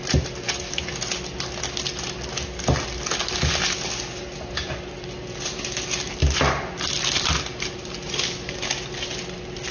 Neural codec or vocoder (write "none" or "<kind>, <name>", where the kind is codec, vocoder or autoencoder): none